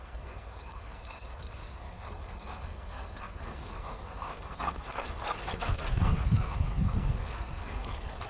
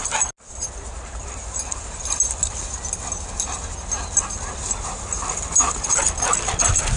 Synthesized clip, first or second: first